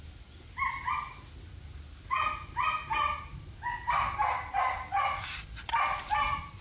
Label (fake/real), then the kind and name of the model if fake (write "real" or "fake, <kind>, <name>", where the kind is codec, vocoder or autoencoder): real